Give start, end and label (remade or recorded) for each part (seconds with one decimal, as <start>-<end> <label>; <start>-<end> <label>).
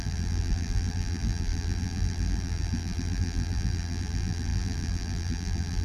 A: 0.0-5.8 remade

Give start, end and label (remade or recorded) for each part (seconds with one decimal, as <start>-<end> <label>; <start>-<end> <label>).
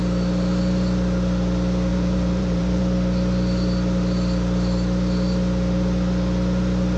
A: 0.0-1.9 recorded; 1.9-2.8 remade; 2.8-7.0 recorded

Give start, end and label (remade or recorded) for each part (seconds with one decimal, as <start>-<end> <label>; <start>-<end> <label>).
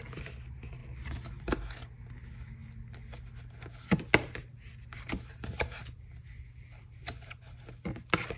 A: 0.0-0.8 recorded; 0.8-1.5 remade; 1.5-8.4 recorded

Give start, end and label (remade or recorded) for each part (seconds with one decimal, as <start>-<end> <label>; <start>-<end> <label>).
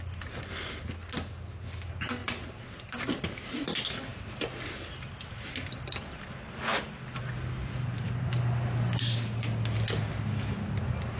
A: 0.0-2.2 recorded; 2.2-3.6 remade; 3.6-4.1 recorded; 4.1-5.9 remade; 5.9-6.7 recorded; 6.7-8.3 remade; 8.3-11.2 recorded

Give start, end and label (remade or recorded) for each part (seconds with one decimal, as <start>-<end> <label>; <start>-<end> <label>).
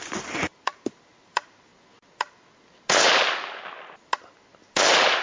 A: 0.0-1.7 remade; 1.7-4.8 recorded; 4.8-5.2 remade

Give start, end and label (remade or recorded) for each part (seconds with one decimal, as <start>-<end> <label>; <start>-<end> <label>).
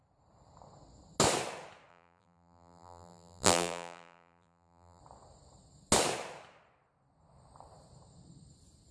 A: 0.0-1.9 recorded; 1.9-5.0 remade; 5.0-8.9 recorded